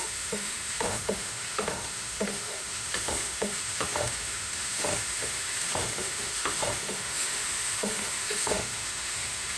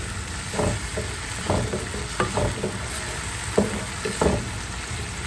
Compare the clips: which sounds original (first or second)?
second